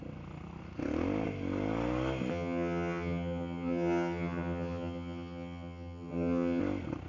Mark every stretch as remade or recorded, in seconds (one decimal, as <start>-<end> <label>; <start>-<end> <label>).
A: 0.0-2.3 recorded; 2.3-6.6 remade; 6.6-7.1 recorded